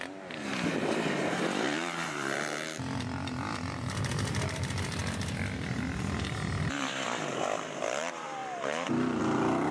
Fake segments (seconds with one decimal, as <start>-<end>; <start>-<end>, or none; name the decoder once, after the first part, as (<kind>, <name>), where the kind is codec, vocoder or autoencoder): 0.0-5.0 (vocoder, BigVGAN v2); 5.8-9.7